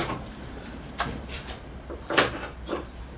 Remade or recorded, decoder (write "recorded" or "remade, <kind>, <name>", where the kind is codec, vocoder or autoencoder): remade, vocoder, BigVGAN v2